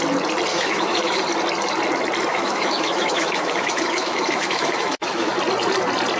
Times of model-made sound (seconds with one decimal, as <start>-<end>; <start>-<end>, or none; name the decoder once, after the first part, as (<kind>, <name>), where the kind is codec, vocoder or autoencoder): 0.5-1.2 (autoencoder, DAC-VAE); 2.3-5.3

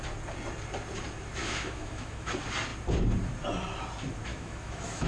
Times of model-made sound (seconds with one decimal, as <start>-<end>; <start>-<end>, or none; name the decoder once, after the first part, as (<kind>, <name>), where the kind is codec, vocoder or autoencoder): 1.4-2.3 (autoencoder, DAC-VAE); 4.3-5.1

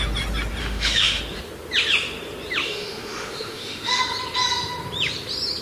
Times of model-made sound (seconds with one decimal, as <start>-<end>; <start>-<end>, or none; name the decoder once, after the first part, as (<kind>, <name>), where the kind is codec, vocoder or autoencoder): 0.6-1.2 (autoencoder, DAC-VAE); 2.6-4.0

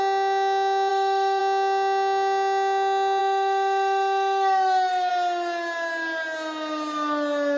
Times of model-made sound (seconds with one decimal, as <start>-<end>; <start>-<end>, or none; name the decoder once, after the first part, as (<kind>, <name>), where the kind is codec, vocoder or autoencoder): 0.9-1.4 (autoencoder, DAC-VAE); 3.2-5.1

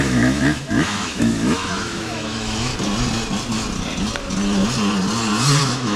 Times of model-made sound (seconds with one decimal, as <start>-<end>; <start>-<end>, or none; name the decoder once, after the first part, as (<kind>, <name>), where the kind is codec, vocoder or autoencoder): 0.0-2.7 (autoencoder, DAC-VAE); 5.6-6.0

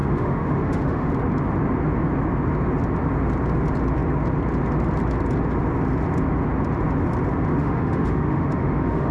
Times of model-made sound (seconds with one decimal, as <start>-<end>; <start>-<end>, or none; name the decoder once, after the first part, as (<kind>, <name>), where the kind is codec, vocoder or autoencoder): 0.0-1.1 (autoencoder, DAC-VAE); 7.6-9.1